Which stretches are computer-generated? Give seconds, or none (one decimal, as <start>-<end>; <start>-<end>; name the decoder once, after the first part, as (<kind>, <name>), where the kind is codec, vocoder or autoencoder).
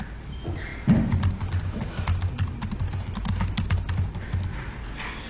none